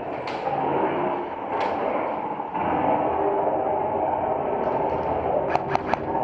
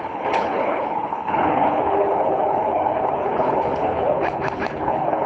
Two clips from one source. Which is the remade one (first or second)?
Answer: second